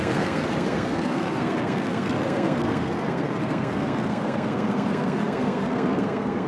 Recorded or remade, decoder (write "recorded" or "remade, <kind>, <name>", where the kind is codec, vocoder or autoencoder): remade, codec, SNAC